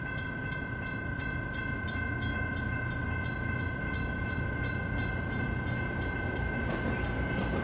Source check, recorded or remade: recorded